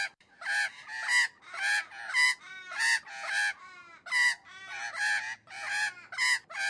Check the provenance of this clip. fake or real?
real